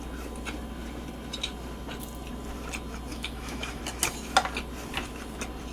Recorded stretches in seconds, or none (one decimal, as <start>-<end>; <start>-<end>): 0.0-3.1; 3.8-5.7